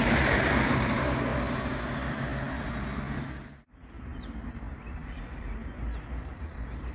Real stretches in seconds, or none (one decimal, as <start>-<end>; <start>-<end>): 1.3-5.4